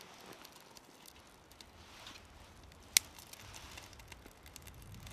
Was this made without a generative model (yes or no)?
yes